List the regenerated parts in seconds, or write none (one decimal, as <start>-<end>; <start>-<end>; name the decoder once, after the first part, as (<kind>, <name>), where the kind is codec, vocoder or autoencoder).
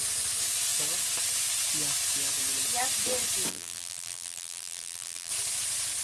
3.5-5.3 (vocoder, BigVGAN v2)